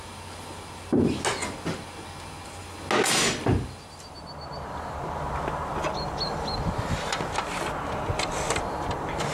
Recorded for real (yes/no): yes